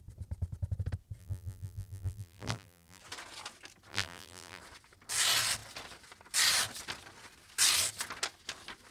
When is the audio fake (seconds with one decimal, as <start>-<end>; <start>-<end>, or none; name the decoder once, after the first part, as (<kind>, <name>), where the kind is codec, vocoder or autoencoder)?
1.2-3.0 (vocoder, BigVGAN v2); 3.9-4.6